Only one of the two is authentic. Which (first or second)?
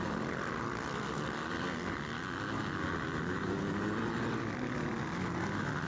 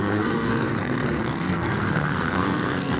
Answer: first